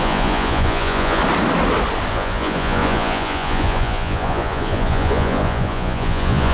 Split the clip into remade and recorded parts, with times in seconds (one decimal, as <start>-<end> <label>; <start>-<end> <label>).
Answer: 0.0-1.2 remade; 1.2-2.1 recorded; 2.1-6.5 remade